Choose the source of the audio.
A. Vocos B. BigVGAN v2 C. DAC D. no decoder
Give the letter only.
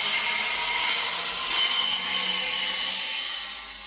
D